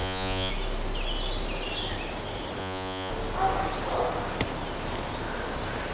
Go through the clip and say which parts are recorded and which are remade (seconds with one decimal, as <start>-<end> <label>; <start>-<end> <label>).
0.0-0.5 remade; 0.5-2.6 recorded; 2.6-3.1 remade; 3.1-5.9 recorded